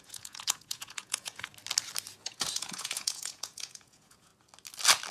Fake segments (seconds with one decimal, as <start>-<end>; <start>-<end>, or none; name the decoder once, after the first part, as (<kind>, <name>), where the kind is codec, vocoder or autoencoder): 0.0-1.5 (vocoder, Vocos); 2.2-4.3